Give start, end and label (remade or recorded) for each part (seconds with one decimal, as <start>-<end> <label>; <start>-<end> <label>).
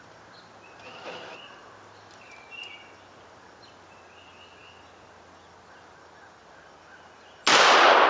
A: 0.0-8.1 recorded